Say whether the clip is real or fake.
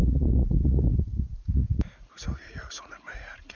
fake